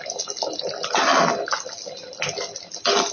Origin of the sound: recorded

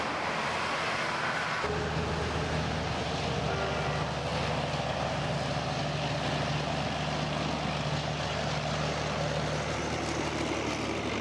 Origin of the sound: recorded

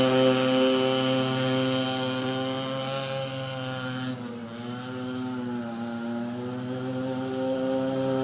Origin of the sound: recorded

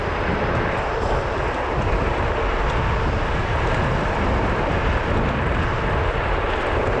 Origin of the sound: recorded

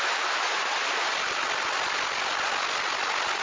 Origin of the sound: recorded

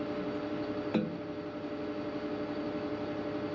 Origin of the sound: recorded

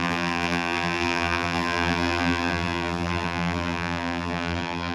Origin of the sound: remade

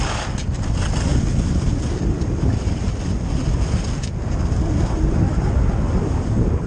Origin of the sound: recorded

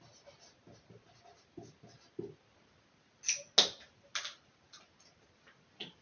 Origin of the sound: recorded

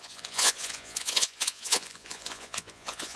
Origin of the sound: remade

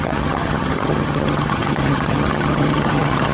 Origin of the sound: remade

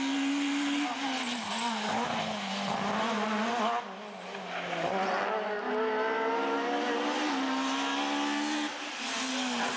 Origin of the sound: recorded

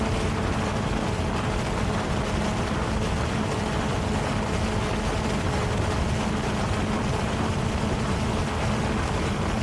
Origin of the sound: recorded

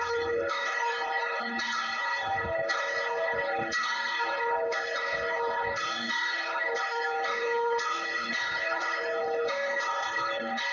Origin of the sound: remade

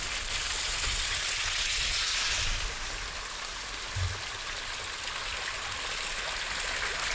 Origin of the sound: recorded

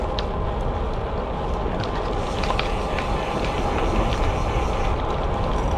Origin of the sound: recorded